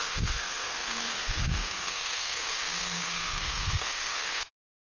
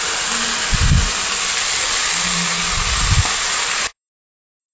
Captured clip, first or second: second